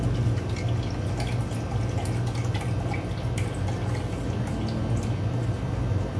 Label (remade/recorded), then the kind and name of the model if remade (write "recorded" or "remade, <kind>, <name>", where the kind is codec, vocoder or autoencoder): recorded